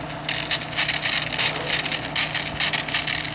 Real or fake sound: real